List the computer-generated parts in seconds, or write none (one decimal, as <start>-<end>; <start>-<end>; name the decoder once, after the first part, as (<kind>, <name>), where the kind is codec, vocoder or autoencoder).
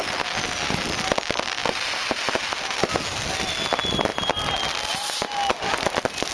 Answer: none